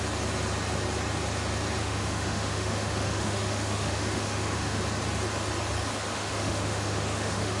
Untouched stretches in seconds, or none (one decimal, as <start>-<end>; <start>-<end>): 0.0-1.8; 4.8-6.1